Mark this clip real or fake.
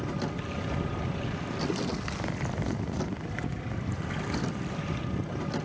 real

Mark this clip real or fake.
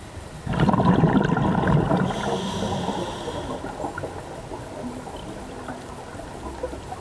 real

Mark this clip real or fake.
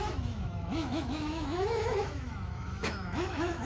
fake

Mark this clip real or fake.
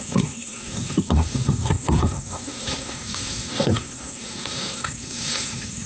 fake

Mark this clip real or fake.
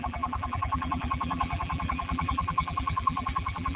fake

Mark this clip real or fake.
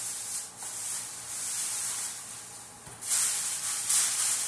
real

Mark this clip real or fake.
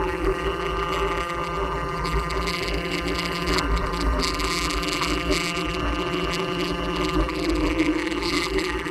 fake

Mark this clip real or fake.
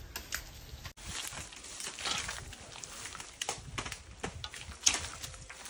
real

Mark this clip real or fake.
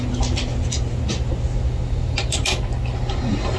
real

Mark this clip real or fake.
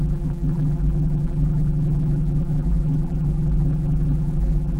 fake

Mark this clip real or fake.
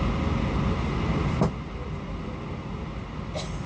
real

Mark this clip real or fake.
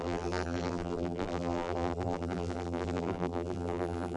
fake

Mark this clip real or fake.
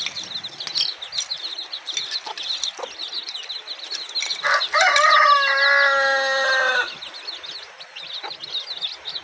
real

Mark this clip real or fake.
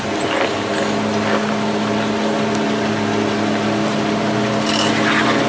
real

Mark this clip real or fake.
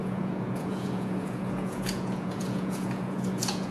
fake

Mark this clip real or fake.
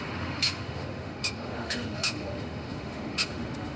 fake